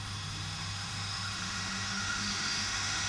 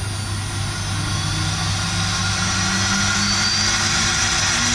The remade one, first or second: first